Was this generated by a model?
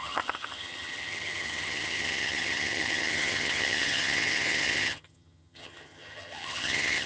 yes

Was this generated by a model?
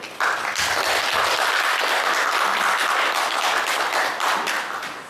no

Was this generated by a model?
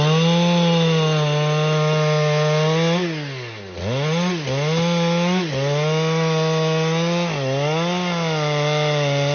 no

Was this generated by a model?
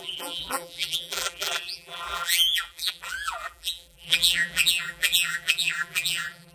yes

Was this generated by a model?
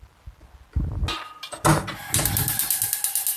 no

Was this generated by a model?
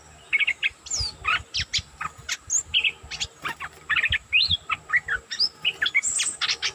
no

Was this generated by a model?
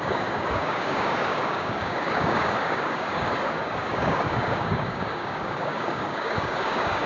yes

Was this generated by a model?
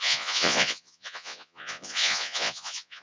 yes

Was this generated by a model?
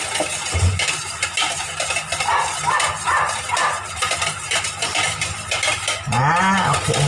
no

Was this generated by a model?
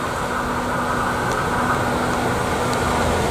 no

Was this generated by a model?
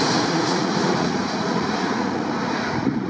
yes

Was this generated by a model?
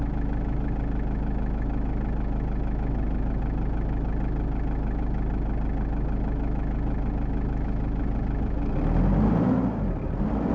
no